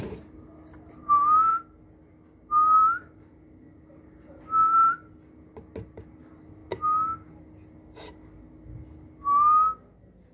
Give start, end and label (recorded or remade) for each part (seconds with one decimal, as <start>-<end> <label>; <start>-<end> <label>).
0.0-10.3 recorded